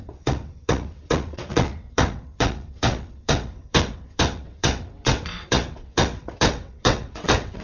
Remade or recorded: remade